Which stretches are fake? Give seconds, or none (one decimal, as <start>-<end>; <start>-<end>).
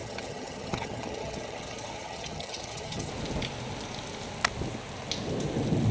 0.0-3.1